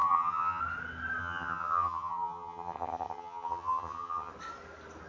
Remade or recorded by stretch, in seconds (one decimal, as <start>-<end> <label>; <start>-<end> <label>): 0.0-0.6 remade; 0.6-1.2 recorded; 1.2-4.3 remade; 4.3-5.1 recorded